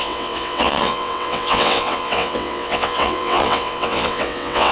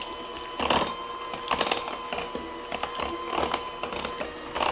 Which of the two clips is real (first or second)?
second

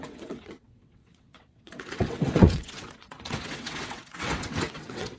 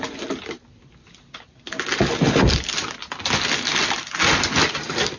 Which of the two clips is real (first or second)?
second